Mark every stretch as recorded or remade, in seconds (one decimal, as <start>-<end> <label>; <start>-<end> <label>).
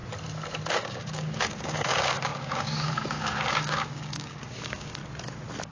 0.0-0.7 recorded; 0.7-5.0 remade; 5.0-5.7 recorded